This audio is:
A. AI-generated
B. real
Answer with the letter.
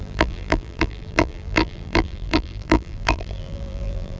A